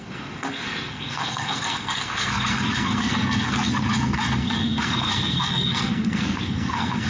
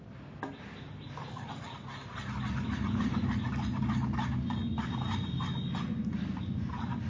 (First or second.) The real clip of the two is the second